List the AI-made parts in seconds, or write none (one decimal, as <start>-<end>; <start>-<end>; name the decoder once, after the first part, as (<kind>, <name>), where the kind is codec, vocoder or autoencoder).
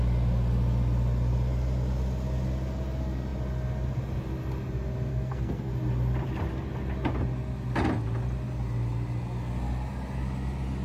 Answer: 5.1-5.7 (codec, SNAC)